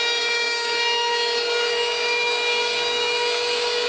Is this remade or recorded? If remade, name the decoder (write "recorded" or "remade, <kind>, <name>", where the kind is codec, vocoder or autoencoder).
remade, codec, DAC